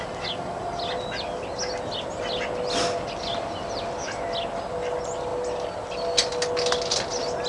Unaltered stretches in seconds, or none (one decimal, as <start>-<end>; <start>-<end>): 0.0-7.5